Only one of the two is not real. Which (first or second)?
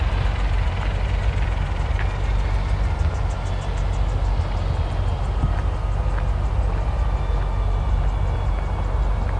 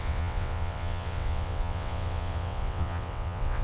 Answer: second